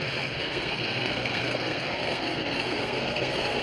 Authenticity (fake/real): fake